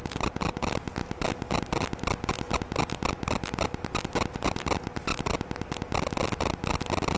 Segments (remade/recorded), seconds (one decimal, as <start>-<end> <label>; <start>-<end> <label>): 0.0-7.2 recorded